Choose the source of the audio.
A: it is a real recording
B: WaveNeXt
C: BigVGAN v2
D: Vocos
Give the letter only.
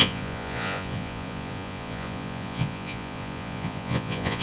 D